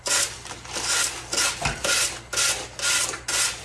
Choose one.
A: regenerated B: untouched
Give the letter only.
B